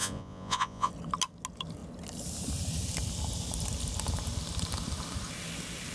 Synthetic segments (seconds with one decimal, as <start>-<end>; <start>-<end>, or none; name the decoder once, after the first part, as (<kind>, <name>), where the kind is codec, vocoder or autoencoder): 0.0-0.9 (vocoder, Vocos)